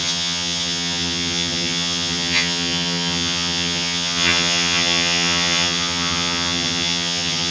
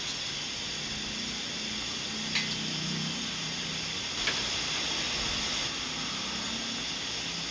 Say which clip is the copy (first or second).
first